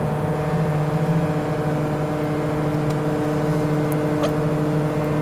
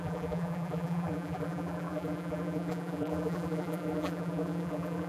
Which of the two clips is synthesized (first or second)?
second